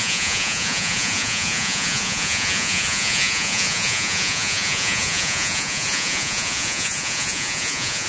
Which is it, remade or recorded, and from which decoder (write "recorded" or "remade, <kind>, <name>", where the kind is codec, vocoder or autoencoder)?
remade, vocoder, Vocos